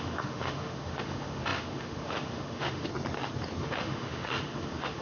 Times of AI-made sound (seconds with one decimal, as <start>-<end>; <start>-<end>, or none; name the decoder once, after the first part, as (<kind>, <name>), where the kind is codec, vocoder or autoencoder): 0.0-2.9 (autoencoder, DAC-VAE); 3.6-5.0